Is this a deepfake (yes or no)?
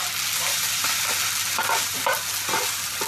no